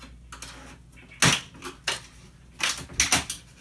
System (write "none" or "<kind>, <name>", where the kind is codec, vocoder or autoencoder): none